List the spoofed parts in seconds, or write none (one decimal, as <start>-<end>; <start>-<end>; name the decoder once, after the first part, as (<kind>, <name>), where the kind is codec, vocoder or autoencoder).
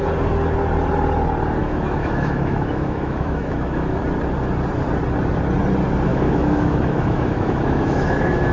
1.6-4.0 (autoencoder, DAC-VAE); 6.1-8.5